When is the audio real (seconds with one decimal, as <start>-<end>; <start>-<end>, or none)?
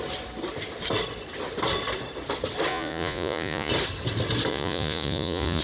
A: 0.0-2.7; 3.7-4.5